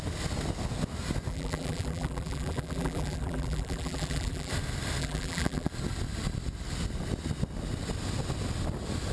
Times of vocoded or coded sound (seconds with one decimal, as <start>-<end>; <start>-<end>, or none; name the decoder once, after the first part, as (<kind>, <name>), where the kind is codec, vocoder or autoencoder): 1.3-4.5 (vocoder, BigVGAN v2); 5.0-5.7